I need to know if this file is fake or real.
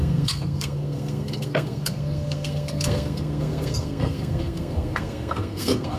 fake